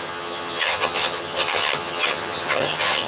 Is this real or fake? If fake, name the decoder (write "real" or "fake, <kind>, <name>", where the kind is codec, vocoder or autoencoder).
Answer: fake, vocoder, HiFi-GAN